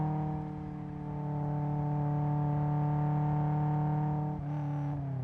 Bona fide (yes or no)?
yes